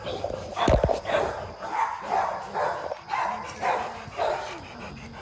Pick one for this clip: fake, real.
real